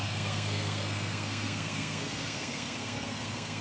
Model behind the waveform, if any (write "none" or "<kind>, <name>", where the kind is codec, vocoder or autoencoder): codec, SNAC